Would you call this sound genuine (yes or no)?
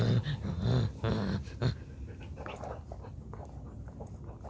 yes